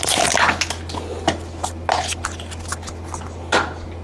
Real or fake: real